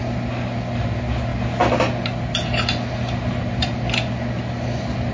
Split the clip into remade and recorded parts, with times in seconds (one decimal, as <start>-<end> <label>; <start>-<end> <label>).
0.0-5.1 recorded